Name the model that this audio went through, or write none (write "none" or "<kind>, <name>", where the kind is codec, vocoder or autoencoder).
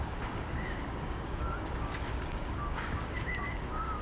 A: codec, DAC